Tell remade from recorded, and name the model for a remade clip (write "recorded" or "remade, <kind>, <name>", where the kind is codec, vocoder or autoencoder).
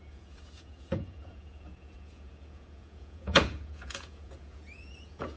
remade, vocoder, Vocos